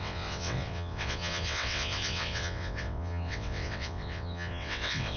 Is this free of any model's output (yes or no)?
no